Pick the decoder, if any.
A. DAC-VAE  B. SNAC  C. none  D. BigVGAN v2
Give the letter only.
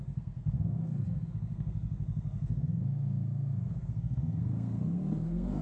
B